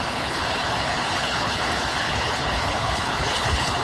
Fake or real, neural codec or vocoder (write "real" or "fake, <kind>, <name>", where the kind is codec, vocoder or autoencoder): fake, codec, HILCodec